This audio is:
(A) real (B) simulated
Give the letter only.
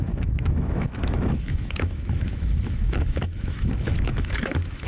B